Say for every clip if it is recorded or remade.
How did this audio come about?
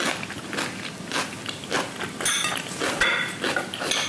recorded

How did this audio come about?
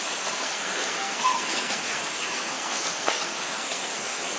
remade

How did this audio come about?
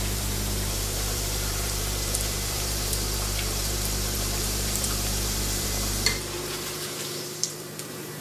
remade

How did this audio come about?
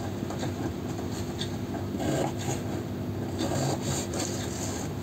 recorded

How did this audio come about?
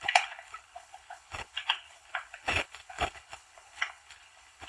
remade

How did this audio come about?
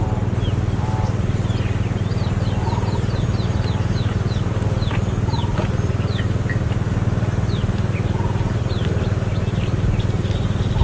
recorded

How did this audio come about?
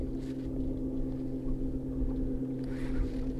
recorded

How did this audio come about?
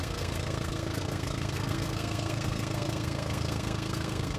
remade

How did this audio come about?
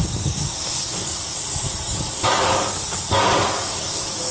remade